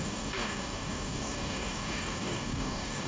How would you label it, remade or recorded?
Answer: remade